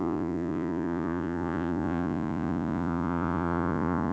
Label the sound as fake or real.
fake